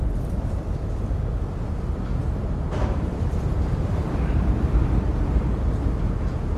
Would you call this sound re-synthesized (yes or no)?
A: yes